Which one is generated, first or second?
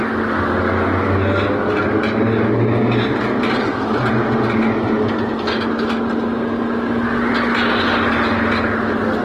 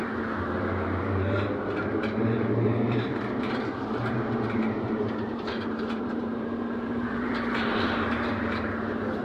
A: second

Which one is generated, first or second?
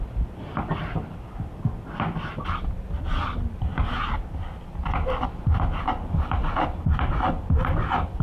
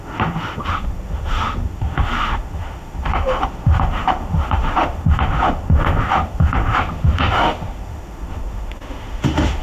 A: second